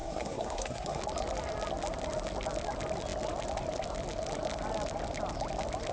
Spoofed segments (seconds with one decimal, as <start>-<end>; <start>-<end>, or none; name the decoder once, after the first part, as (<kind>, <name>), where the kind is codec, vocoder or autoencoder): 0.0-1.0 (codec, SNAC)